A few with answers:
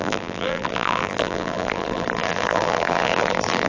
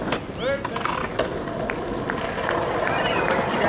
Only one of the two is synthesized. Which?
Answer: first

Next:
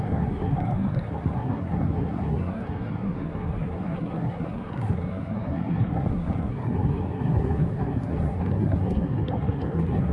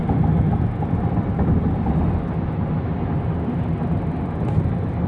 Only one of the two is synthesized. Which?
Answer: first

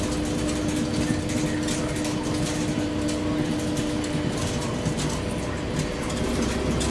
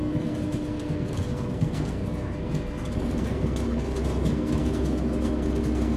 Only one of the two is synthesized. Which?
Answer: second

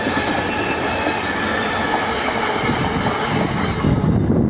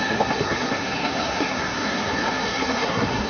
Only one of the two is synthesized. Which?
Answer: second